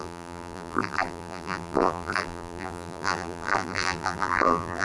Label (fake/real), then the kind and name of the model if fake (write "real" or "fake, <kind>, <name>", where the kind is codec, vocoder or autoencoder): fake, vocoder, BigVGAN v2